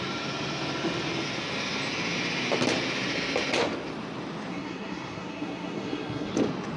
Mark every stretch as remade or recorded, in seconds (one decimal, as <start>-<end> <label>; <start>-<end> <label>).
0.0-4.5 recorded; 4.5-6.3 remade; 6.3-6.8 recorded